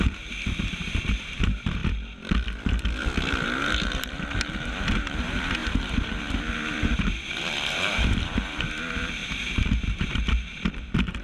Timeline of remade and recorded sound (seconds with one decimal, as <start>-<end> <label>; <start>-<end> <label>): 0.0-1.8 remade; 1.8-3.3 recorded; 3.3-11.2 remade